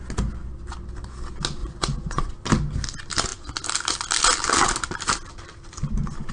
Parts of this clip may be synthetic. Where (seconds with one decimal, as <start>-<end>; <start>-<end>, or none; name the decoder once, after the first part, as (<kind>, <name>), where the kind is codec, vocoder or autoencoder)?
1.6-2.3 (vocoder, Vocos)